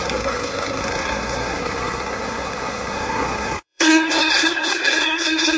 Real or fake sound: fake